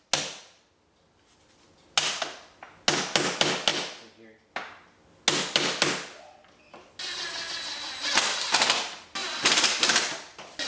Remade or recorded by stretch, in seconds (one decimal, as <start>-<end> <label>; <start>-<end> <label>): 0.0-10.7 recorded

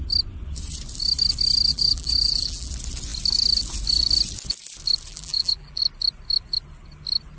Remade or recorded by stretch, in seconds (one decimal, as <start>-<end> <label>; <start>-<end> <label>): 0.0-1.7 recorded; 1.7-2.7 remade; 2.7-5.1 recorded; 5.1-5.8 remade; 5.8-7.4 recorded

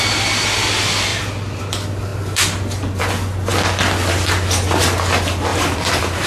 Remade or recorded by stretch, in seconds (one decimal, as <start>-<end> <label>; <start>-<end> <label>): 0.0-1.1 recorded; 1.1-1.6 remade; 1.6-5.5 recorded; 5.5-6.3 remade

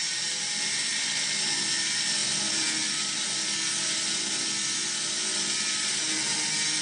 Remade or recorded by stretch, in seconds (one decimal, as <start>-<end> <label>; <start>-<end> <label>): 0.0-6.8 recorded

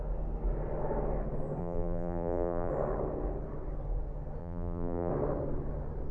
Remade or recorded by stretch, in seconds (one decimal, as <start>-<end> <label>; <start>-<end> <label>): 0.0-1.6 recorded; 1.6-2.7 remade; 2.7-4.4 recorded; 4.4-5.1 remade; 5.1-6.1 recorded

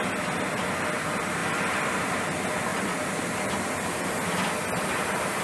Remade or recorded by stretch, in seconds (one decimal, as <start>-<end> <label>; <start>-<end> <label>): 0.0-2.7 recorded; 2.7-5.4 remade

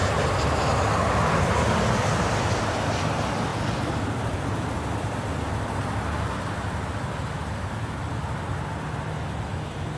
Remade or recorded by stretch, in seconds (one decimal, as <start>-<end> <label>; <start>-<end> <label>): 0.0-3.5 recorded; 3.5-8.1 remade; 8.1-10.0 recorded

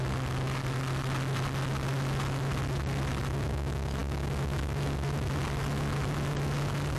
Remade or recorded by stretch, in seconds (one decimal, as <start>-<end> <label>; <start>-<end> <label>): 0.0-7.0 recorded